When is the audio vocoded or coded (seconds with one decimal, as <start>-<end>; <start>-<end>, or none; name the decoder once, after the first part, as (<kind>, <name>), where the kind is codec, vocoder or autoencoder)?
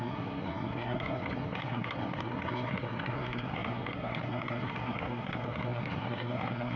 0.0-6.8 (codec, SNAC)